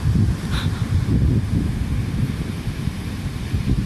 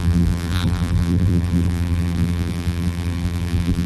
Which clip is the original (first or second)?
first